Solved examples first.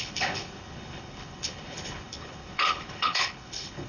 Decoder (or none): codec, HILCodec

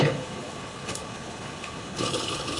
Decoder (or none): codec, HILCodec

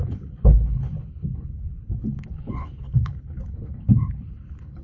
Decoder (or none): codec, HILCodec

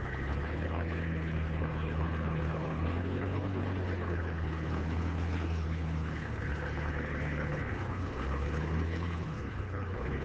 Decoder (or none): codec, HILCodec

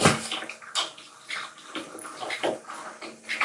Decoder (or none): none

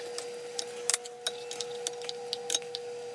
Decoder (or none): none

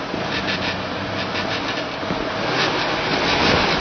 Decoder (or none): none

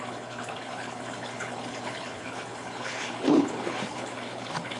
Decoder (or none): codec, HILCodec